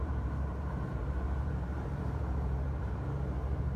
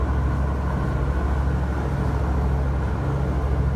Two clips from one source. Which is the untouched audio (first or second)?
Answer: second